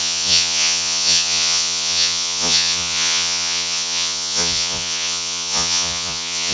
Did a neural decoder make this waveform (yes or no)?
yes